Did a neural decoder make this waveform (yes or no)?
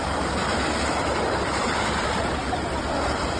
no